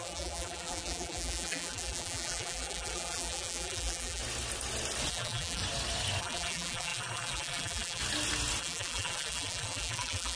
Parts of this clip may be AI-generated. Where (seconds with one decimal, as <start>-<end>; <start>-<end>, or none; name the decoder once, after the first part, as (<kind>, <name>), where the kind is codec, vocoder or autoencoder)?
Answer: 0.0-4.2 (vocoder, BigVGAN v2); 5.1-5.6; 6.2-8.0; 8.6-10.4